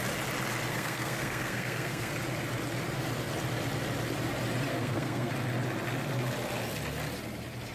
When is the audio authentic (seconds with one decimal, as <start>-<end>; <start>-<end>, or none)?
0.0-0.7; 2.1-4.7; 5.3-7.7